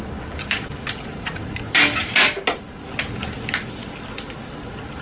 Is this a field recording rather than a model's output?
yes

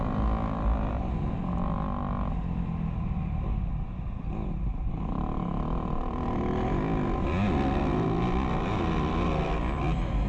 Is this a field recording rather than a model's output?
yes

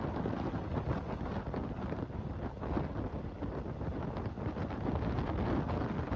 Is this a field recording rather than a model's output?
yes